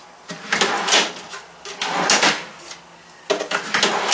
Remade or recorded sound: recorded